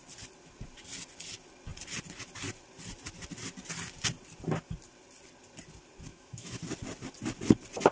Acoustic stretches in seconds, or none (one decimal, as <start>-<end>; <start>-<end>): 0.0-6.1; 6.6-7.9